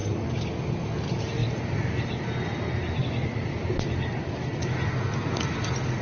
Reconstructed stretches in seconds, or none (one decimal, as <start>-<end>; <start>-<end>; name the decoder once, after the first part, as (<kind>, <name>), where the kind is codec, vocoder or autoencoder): none